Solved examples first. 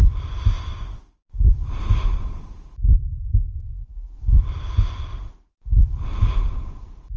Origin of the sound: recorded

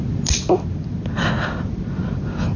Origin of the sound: recorded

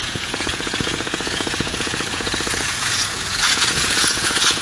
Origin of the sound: remade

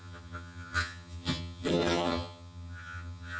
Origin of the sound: remade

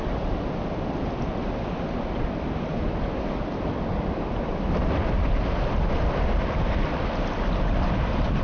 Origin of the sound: recorded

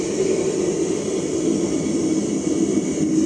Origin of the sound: recorded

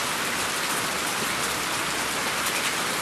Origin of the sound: recorded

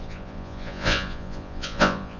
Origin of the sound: remade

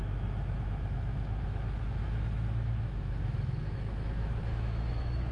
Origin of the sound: remade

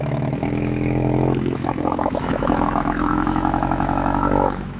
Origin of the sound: remade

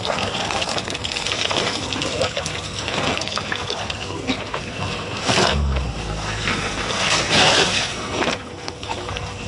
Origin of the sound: remade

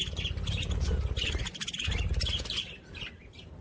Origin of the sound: recorded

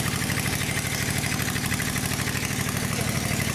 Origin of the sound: recorded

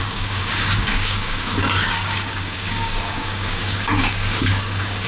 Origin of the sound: remade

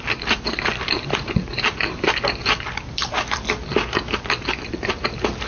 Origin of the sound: recorded